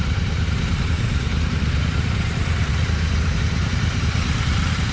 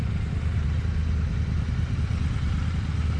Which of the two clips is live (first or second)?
second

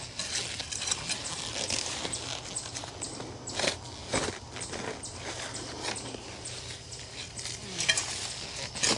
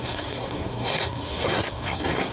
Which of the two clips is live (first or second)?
first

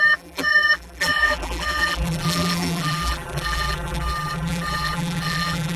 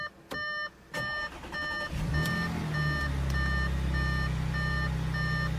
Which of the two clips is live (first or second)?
second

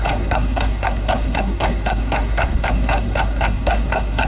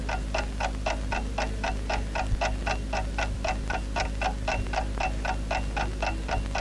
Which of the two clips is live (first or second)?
second